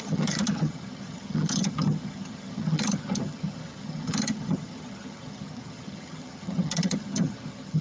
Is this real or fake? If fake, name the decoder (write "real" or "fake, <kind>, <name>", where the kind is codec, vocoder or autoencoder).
fake, vocoder, HiFi-GAN